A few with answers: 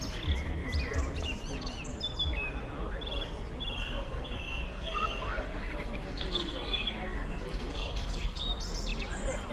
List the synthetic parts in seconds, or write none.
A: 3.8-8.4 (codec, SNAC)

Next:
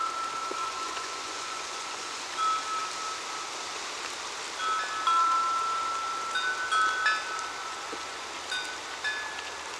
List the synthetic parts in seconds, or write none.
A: 0.4-2.4 (vocoder, Vocos); 7.6-8.3

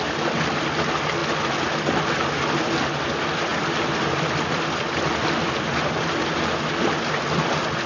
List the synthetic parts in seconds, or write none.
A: none

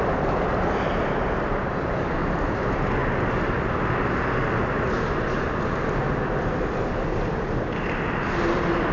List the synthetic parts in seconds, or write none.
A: none

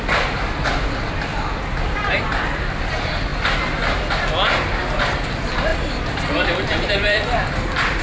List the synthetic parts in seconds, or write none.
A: 1.3-2.4 (vocoder, BigVGAN v2); 5.7-7.4

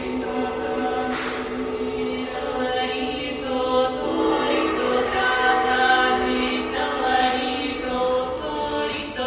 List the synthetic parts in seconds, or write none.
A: 4.8-6.5 (codec, DAC)